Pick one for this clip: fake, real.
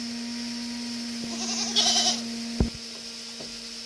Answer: real